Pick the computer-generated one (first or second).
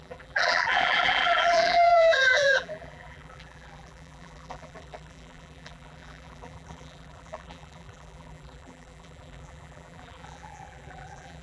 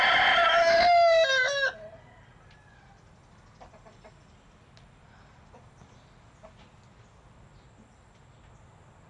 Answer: first